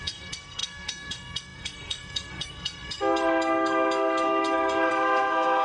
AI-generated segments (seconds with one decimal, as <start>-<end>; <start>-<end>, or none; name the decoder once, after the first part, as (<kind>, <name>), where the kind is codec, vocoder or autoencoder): 0.0-5.6 (codec, SNAC)